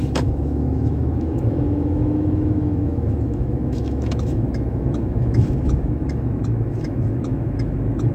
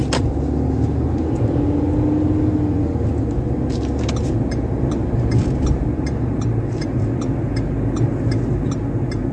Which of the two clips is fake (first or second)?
first